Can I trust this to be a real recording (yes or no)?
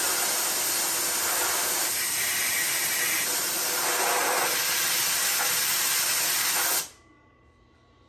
yes